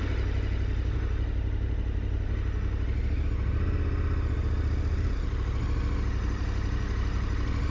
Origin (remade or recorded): recorded